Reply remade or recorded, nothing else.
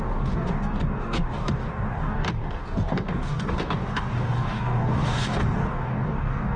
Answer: remade